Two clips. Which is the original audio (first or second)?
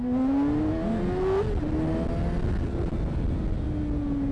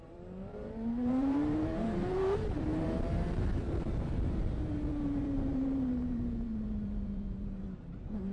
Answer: first